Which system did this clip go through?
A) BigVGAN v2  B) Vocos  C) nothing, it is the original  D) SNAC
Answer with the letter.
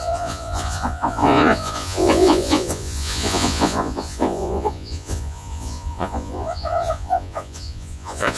B